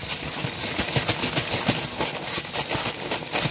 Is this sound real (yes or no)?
yes